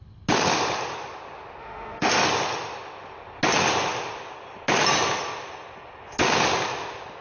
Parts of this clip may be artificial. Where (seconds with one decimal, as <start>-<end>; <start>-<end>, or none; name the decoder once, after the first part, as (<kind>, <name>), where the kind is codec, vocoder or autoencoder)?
1.6-2.2 (autoencoder, DAC-VAE)